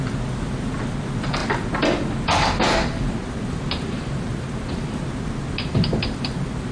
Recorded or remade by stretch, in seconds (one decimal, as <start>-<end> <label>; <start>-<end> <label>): 0.0-6.7 recorded